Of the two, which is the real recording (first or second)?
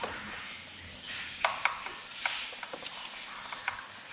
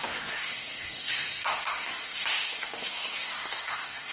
first